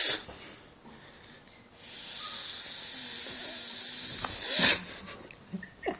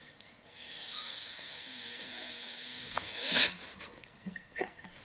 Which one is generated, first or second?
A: second